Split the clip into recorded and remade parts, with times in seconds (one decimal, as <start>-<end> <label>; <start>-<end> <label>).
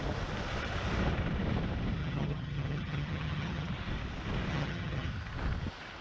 0.0-2.0 recorded; 2.0-3.7 remade; 3.7-4.5 recorded; 4.5-5.1 remade; 5.1-6.0 recorded